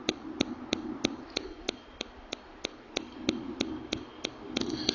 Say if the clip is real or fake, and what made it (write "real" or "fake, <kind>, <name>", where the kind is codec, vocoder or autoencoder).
real